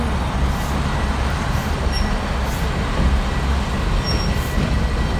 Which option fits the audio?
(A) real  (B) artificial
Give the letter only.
A